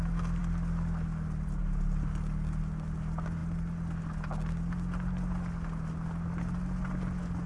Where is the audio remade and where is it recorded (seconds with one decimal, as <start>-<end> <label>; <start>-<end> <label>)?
0.0-7.5 recorded